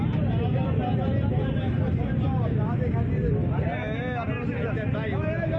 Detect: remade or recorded recorded